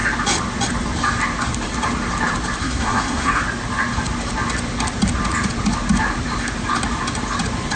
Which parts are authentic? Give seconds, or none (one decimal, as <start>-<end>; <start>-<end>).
0.0-2.6; 3.4-7.8